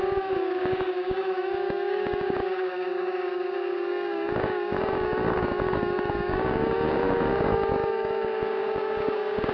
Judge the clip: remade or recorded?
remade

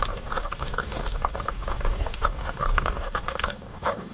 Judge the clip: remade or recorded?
remade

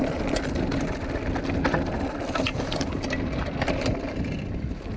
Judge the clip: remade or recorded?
recorded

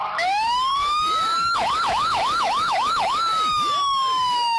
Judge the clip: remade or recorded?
remade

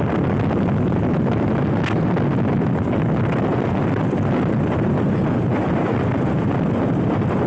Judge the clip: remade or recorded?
recorded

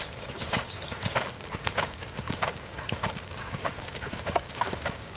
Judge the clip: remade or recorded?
remade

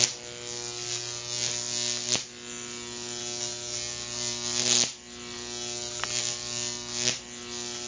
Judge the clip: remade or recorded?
recorded